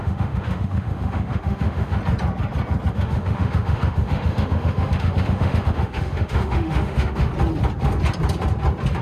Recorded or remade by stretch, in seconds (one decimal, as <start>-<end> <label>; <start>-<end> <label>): 0.0-2.0 remade; 2.0-2.9 recorded; 2.9-7.3 remade; 7.3-9.0 recorded